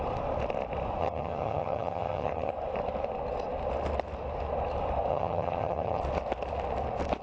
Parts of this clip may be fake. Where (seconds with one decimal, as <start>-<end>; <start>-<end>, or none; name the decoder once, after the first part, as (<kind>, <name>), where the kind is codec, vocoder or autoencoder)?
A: 1.0-2.5 (vocoder, HiFi-GAN); 5.1-6.0